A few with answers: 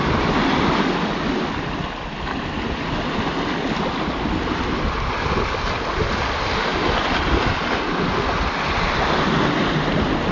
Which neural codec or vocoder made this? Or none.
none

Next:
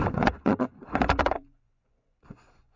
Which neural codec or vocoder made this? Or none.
vocoder, Vocos